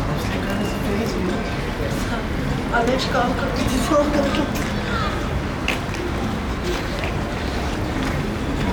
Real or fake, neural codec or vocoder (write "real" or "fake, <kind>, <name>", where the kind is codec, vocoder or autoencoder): real